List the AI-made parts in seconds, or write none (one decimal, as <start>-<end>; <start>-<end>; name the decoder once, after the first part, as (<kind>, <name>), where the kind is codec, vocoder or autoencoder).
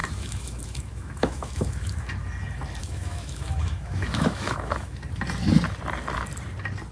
0.0-2.1 (autoencoder, DAC-VAE); 2.8-5.0